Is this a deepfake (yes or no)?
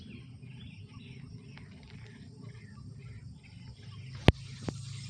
no